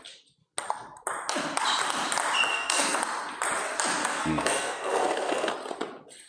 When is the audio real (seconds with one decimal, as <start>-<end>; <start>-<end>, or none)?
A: 0.0-2.5; 3.0-4.0; 5.5-6.3